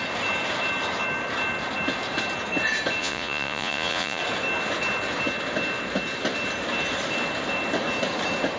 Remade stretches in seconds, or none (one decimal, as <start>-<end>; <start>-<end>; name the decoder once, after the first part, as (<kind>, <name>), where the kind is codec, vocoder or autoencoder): 3.0-4.2 (vocoder, Vocos)